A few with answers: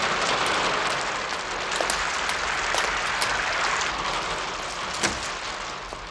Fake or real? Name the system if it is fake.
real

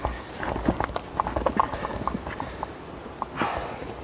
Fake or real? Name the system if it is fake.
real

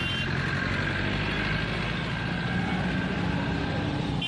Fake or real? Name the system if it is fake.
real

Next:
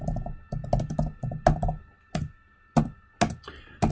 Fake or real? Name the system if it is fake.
real